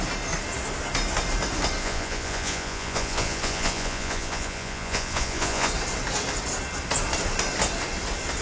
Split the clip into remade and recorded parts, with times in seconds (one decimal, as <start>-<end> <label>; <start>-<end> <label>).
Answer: 0.0-1.8 recorded; 1.8-5.7 remade; 5.7-8.4 recorded